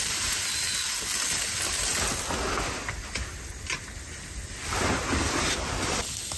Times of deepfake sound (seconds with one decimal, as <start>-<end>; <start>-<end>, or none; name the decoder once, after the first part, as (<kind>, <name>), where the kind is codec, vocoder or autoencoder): none